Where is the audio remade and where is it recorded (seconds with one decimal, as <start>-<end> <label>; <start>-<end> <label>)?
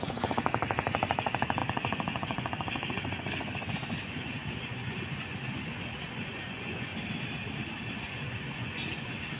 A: 0.0-6.9 remade; 6.9-8.1 recorded; 8.1-9.4 remade